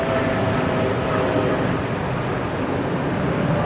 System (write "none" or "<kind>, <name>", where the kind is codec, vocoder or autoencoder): none